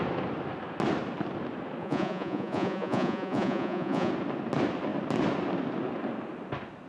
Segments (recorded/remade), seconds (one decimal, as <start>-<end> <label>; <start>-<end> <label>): 0.0-1.8 recorded; 1.8-4.1 remade; 4.1-6.9 recorded